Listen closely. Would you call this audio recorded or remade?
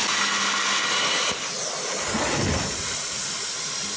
recorded